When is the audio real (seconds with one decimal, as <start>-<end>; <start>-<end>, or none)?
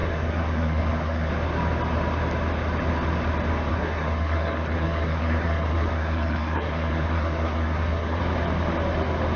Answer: 1.3-3.7; 8.2-9.4